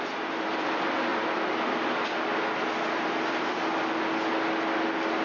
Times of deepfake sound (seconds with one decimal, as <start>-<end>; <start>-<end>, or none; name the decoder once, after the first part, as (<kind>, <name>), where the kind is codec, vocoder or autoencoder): none